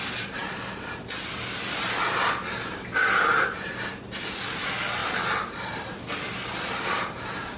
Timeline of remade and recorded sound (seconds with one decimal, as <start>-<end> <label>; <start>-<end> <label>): 0.0-7.6 recorded